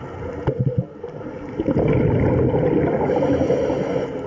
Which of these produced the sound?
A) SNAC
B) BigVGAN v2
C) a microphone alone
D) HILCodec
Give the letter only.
C